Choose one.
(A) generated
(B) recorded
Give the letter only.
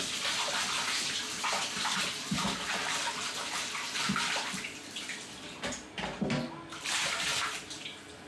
B